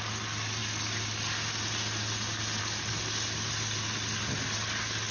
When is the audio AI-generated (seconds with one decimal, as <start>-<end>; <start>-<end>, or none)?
none